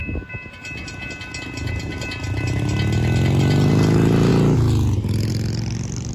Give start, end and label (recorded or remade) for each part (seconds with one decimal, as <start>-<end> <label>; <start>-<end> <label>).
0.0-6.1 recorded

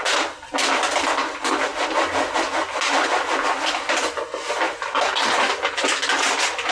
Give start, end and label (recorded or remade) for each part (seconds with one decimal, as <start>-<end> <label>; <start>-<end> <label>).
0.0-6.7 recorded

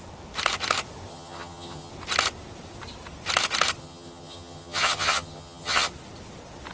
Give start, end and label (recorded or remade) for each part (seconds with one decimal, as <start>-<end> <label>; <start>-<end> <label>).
0.0-1.1 recorded; 1.1-1.9 remade; 1.9-3.8 recorded; 3.8-5.9 remade; 5.9-6.7 recorded